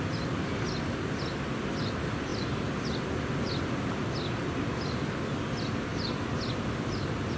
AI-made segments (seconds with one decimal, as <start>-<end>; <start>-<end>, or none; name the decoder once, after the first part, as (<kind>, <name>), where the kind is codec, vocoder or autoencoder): none